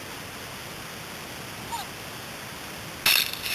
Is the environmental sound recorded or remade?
recorded